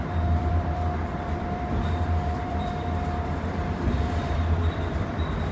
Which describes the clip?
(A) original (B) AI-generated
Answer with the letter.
B